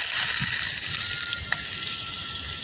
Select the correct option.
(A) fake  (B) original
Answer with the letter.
B